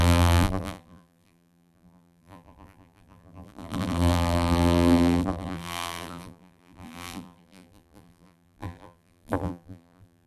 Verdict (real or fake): fake